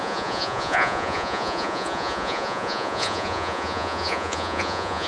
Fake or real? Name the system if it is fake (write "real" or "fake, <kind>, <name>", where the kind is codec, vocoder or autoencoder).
fake, vocoder, Vocos